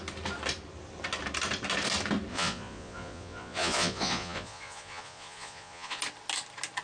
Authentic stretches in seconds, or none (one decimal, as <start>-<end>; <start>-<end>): 0.0-2.3; 6.0-6.8